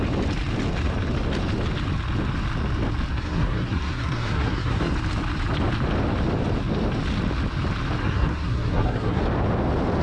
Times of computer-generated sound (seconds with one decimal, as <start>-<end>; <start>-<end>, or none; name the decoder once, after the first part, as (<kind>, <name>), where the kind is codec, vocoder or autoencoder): 3.1-4.9 (codec, SNAC); 8.0-9.2